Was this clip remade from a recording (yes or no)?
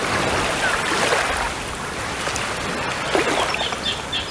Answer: no